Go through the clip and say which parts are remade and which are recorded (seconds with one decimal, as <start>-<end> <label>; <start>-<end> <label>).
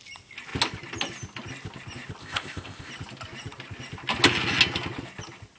0.0-2.2 recorded; 2.2-2.9 remade; 2.9-5.6 recorded